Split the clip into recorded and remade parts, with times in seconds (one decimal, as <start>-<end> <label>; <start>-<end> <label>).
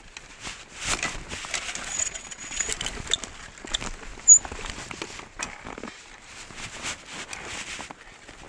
0.0-1.9 recorded; 1.9-2.7 remade; 2.7-8.5 recorded